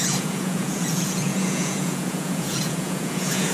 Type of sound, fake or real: fake